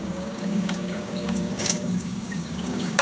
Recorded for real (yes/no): no